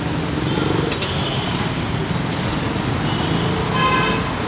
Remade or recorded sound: recorded